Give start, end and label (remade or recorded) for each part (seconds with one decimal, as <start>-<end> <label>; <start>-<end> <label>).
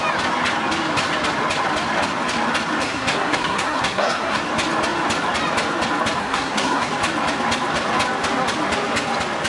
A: 0.0-2.8 recorded; 2.8-4.4 remade; 4.4-6.2 recorded; 6.2-6.9 remade; 6.9-9.5 recorded